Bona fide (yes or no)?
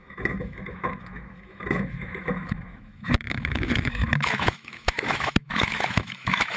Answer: no